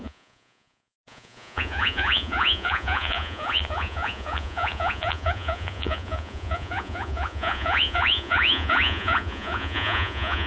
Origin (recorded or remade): remade